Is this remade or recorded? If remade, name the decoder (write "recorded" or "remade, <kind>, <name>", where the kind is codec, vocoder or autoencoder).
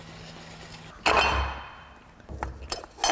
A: recorded